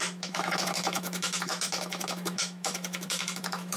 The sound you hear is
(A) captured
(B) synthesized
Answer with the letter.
B